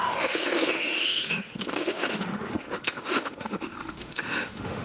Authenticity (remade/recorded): remade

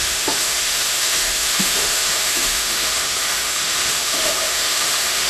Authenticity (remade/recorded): remade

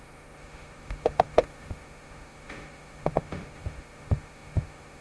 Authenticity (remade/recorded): remade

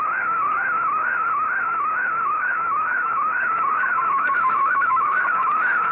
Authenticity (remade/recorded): remade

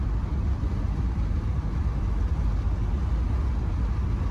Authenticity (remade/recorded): recorded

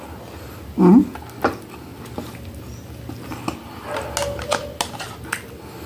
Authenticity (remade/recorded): recorded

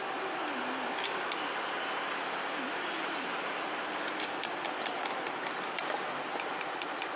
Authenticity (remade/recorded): recorded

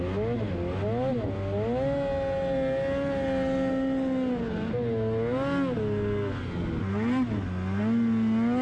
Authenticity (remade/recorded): recorded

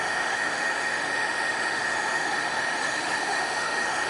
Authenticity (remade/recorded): remade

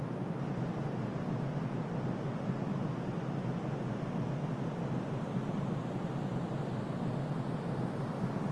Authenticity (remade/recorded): recorded